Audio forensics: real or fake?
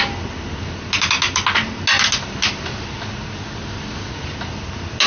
real